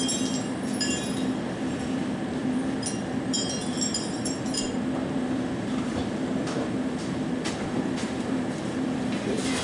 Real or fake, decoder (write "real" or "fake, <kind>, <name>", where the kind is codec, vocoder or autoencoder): fake, vocoder, BigVGAN v2